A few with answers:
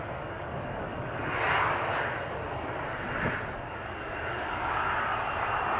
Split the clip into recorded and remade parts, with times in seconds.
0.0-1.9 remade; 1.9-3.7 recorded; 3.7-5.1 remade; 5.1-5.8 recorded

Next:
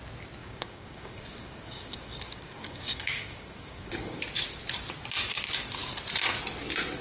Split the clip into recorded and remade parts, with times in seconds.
0.0-0.4 recorded; 0.4-4.2 remade; 4.2-7.0 recorded

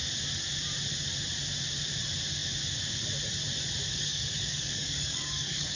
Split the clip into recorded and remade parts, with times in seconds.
0.0-3.9 recorded; 3.9-5.8 remade